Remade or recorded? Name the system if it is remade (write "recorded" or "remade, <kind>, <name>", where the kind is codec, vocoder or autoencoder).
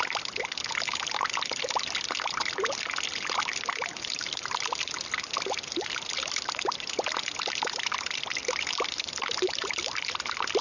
recorded